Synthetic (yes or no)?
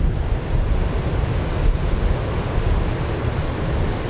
no